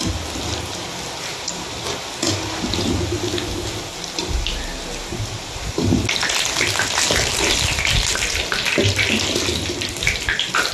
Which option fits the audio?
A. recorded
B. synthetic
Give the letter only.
A